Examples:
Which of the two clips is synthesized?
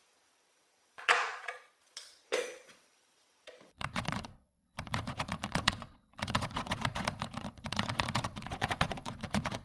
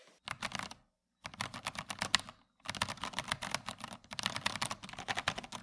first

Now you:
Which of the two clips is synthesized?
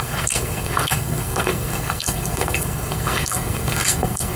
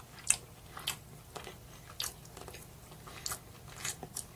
first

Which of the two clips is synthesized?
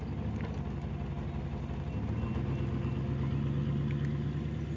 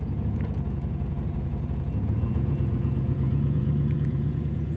second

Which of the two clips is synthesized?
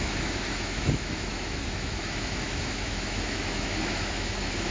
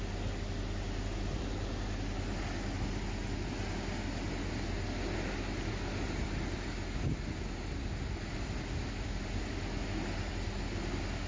first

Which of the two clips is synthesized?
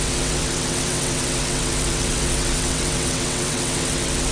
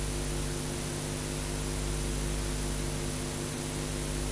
first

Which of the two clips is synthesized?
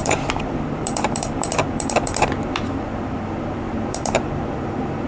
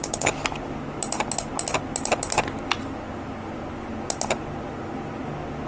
first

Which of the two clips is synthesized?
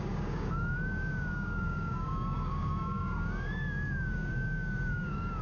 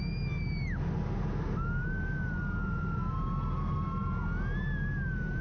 first